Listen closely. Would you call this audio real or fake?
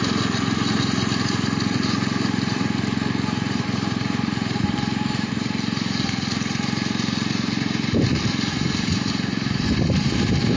fake